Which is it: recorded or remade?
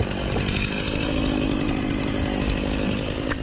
recorded